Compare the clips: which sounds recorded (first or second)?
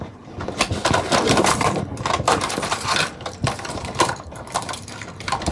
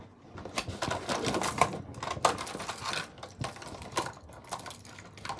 second